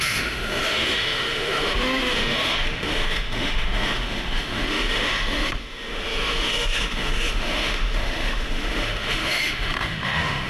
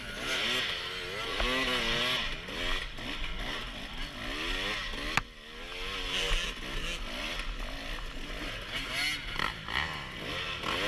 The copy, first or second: first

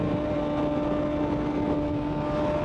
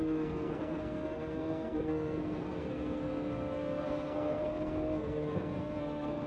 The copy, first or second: second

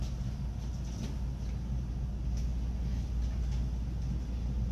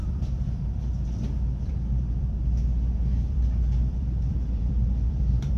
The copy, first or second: second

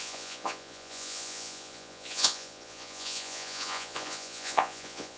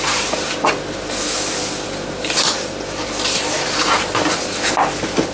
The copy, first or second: first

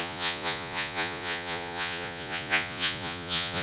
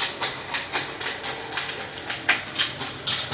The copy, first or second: first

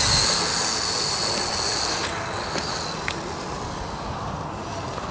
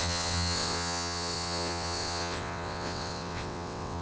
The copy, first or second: second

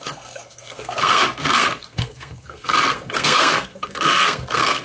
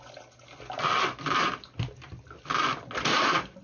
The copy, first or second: first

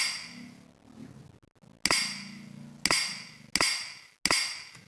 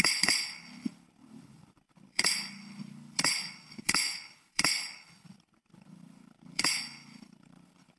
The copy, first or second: second